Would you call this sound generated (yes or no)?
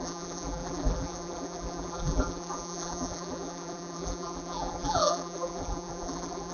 yes